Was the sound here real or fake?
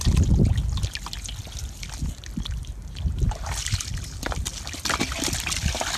real